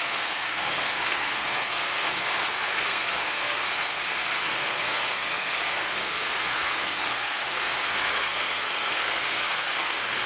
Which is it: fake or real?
fake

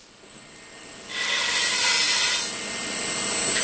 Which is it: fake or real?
real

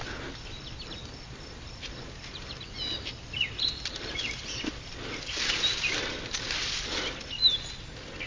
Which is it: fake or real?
real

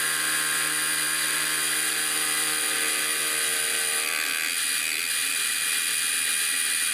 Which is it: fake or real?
real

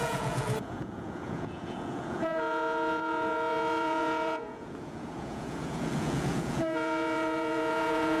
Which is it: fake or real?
fake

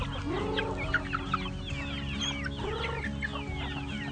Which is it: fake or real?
real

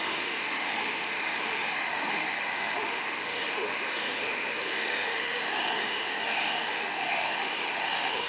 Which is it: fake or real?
fake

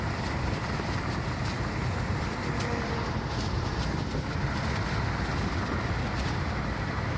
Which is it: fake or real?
real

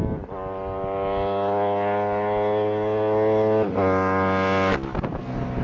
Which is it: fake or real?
real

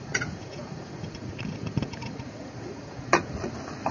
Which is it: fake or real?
fake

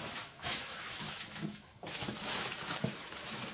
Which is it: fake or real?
fake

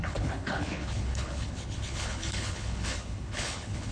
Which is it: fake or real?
fake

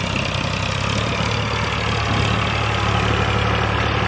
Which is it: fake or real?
real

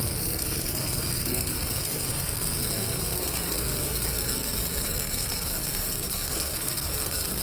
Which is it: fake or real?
fake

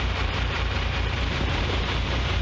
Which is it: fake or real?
fake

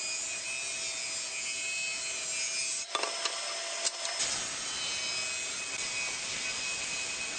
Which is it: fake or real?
real